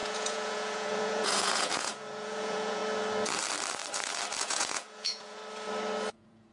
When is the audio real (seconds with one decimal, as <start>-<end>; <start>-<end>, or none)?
2.8-4.4; 5.4-6.1